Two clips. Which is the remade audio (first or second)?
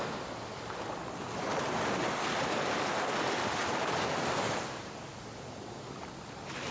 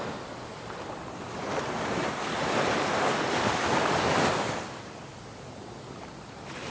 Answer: second